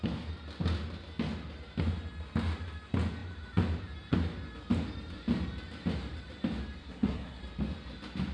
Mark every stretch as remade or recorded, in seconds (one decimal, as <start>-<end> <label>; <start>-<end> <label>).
0.0-6.8 recorded; 6.8-7.4 remade; 7.4-8.3 recorded